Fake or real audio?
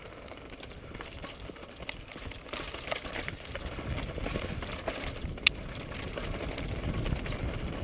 real